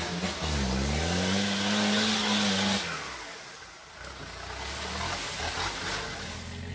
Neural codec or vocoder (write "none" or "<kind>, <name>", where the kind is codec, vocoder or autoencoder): none